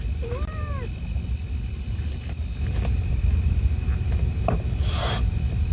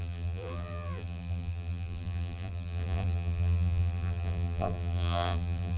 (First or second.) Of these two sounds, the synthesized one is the second